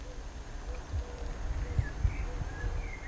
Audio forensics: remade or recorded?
recorded